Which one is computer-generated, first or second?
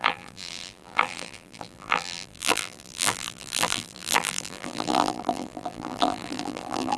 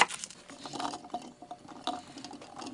first